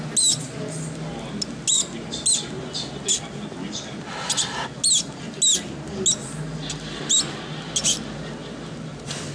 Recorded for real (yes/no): yes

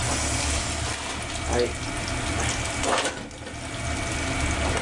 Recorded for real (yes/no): yes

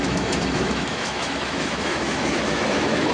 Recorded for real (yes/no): no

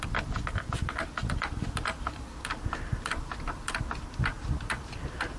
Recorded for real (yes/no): yes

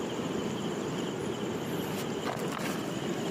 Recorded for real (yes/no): yes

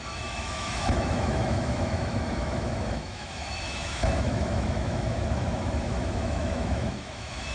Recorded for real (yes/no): no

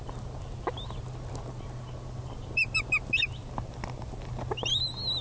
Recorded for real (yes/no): yes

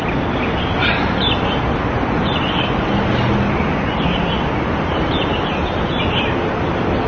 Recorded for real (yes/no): yes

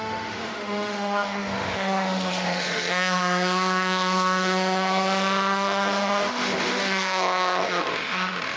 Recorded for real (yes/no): no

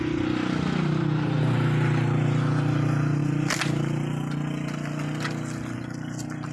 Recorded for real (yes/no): yes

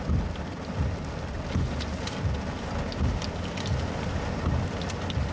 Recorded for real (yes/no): yes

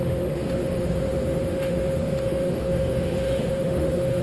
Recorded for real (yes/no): no